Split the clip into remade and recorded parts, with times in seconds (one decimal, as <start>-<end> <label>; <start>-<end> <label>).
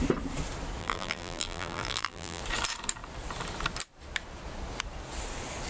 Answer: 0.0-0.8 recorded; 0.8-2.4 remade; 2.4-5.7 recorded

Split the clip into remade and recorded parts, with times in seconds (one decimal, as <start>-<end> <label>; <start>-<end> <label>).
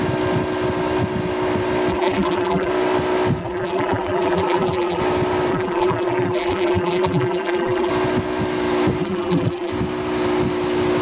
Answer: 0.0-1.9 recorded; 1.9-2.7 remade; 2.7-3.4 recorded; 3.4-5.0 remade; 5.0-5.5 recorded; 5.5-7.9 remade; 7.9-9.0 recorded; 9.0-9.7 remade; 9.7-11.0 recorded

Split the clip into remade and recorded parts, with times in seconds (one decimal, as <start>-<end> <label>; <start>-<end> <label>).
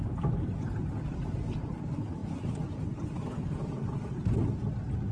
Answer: 0.0-5.1 recorded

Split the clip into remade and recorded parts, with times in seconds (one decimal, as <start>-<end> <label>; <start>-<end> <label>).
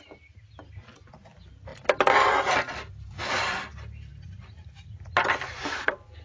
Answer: 0.0-1.7 recorded; 1.7-3.1 remade; 3.1-4.1 recorded; 4.1-4.7 remade; 4.7-6.2 recorded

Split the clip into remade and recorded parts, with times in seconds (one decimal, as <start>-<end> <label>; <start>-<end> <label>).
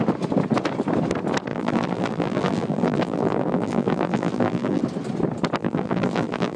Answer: 0.0-1.5 recorded; 1.5-4.8 remade; 4.8-5.6 recorded; 5.6-6.6 remade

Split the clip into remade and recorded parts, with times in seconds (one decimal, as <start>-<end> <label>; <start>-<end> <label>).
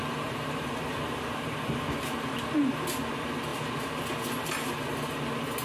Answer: 0.0-1.8 remade; 1.8-5.6 recorded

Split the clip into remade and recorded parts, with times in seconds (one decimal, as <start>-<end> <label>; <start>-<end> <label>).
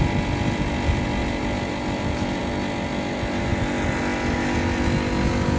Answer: 0.0-1.2 recorded; 1.2-2.4 remade; 2.4-5.6 recorded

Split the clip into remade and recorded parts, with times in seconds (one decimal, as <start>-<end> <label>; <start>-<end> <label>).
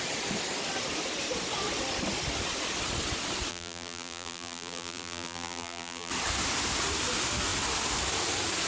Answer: 0.0-3.5 recorded; 3.5-6.1 remade; 6.1-8.7 recorded